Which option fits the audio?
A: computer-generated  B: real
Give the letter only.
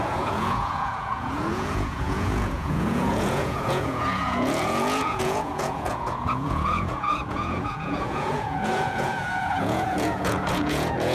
A